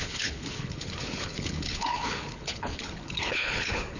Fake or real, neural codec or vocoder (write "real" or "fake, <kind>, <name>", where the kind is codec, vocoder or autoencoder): fake, codec, HILCodec